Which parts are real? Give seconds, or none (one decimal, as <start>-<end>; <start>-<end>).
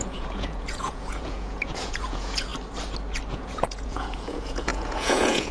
2.5-3.3